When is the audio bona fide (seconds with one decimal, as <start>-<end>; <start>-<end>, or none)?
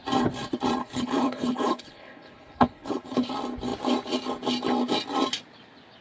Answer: 0.0-0.8; 3.3-6.0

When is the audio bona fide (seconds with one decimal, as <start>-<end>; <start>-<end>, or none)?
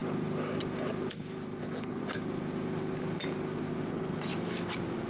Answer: 0.0-1.6; 2.0-3.9; 4.3-5.1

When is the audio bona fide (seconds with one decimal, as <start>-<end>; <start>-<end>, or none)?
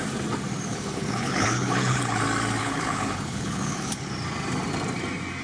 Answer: 0.0-0.7; 2.2-2.6; 4.1-5.4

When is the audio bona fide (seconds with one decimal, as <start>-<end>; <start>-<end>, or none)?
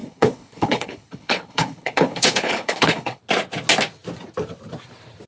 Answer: 3.2-5.3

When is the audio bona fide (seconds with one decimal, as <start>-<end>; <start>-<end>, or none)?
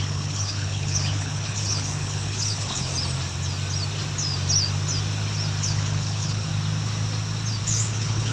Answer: 2.9-5.6; 6.5-7.6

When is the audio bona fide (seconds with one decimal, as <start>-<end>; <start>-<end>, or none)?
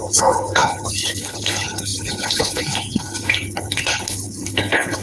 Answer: none